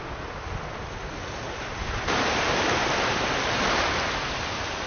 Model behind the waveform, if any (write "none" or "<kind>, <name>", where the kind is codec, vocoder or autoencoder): none